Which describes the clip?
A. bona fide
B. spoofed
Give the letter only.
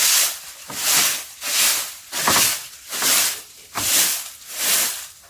A